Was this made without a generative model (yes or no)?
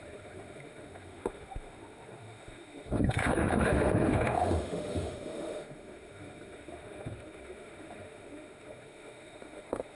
no